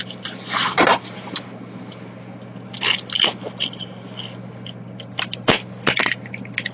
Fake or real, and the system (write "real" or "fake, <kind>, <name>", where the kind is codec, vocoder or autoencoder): real